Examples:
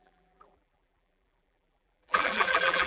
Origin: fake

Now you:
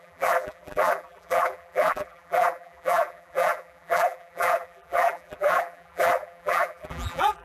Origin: fake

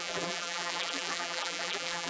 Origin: fake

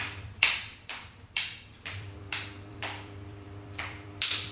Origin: fake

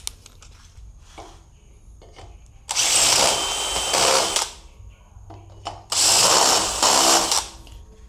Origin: real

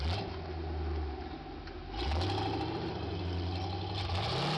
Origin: real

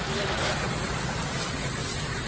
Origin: fake